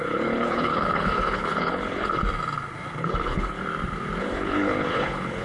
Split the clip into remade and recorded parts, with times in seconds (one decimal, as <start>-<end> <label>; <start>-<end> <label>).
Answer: 0.0-2.2 remade; 2.2-3.0 recorded; 3.0-3.6 remade; 3.6-4.2 recorded; 4.2-5.4 remade